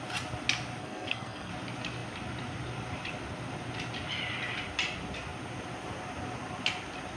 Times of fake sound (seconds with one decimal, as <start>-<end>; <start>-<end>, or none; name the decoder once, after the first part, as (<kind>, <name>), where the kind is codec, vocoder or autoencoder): 0.8-1.5 (codec, SNAC)